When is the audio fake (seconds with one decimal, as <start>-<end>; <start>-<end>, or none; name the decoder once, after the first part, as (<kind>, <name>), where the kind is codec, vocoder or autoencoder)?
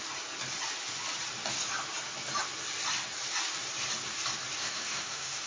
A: 4.6-5.5 (autoencoder, DAC-VAE)